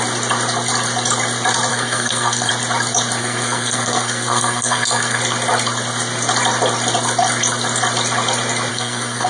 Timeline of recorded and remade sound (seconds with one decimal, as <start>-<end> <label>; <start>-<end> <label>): 0.0-1.7 recorded; 1.7-2.5 remade; 2.5-3.2 recorded; 3.2-5.2 remade; 5.2-8.7 recorded; 8.7-9.3 remade